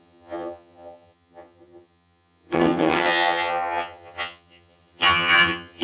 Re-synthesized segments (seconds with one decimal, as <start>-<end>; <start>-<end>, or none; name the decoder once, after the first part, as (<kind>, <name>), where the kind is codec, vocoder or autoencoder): 0.0-5.8 (vocoder, HiFi-GAN)